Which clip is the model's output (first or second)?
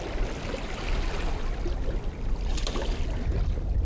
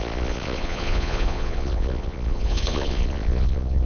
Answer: second